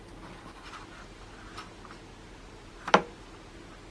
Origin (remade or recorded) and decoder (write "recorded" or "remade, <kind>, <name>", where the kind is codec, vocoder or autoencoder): recorded